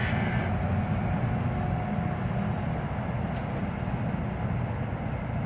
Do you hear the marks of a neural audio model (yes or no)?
no